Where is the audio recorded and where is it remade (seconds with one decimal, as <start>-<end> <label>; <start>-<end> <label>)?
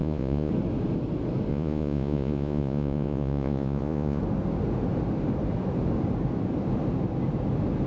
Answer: 0.0-0.5 remade; 0.5-1.5 recorded; 1.5-4.2 remade; 4.2-7.9 recorded